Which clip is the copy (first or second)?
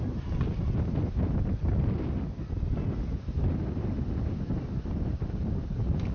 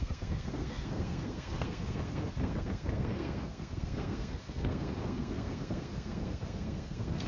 second